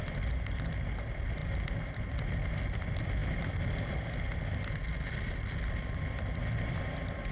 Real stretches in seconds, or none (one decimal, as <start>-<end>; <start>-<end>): 0.0-7.3